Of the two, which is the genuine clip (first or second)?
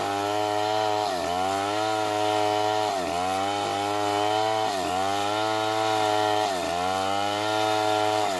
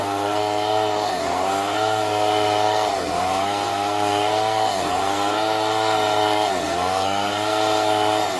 first